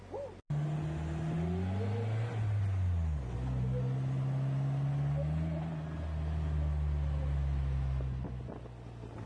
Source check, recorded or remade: recorded